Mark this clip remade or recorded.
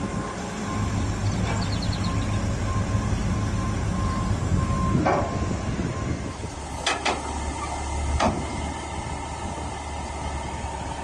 recorded